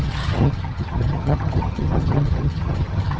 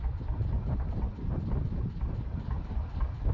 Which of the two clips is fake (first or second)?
first